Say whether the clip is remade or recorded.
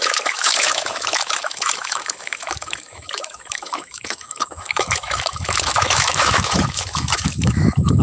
remade